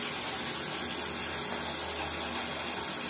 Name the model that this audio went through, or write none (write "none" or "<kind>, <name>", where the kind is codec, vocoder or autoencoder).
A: none